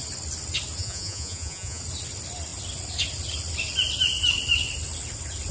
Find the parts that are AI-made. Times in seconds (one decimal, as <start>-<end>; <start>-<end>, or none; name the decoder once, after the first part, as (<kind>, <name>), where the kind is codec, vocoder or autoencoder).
0.8-1.8 (vocoder, Vocos)